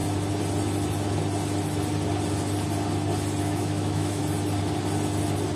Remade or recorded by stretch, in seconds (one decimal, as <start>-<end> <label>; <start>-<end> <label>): 0.0-3.4 recorded; 3.4-4.2 remade; 4.2-5.6 recorded